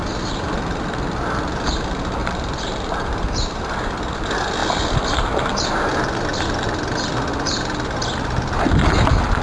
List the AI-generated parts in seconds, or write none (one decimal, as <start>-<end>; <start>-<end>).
2.2-3.6